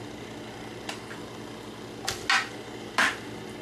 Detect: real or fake real